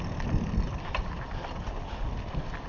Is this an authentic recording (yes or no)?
yes